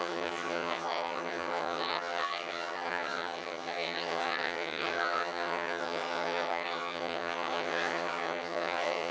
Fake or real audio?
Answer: fake